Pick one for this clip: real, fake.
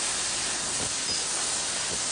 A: real